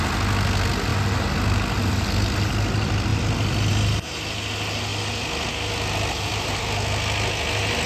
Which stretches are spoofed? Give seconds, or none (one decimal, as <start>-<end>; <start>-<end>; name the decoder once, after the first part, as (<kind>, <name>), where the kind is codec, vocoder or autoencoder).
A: none